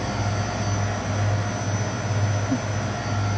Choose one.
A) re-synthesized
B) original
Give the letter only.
B